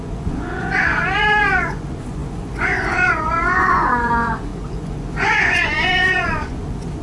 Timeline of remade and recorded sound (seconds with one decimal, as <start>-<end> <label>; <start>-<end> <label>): 0.0-7.0 remade